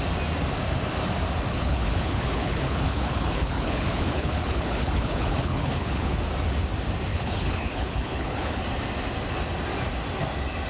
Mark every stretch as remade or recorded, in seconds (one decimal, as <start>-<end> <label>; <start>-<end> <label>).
0.0-1.5 recorded; 1.5-6.2 remade; 6.2-7.1 recorded; 7.1-8.6 remade; 8.6-10.7 recorded